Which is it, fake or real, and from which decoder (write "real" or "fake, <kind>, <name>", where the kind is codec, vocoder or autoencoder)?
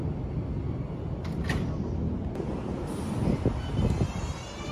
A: real